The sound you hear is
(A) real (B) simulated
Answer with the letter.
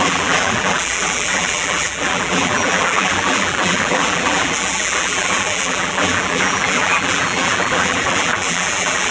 B